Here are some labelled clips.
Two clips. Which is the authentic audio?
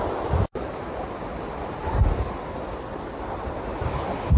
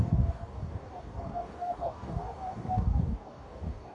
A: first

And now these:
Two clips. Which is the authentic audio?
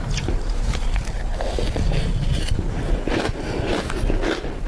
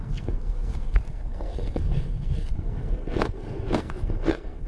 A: first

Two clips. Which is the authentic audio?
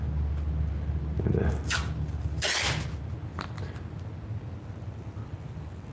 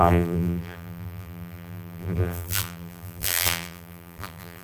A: first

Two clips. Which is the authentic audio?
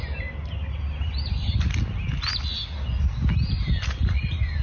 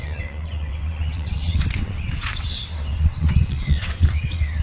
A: first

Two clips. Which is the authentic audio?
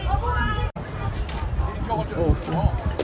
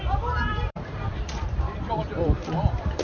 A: first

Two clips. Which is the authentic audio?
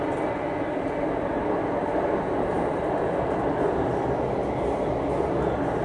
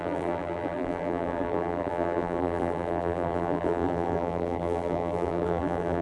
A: first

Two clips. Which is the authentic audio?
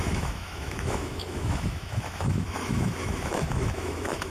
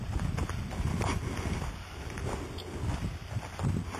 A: second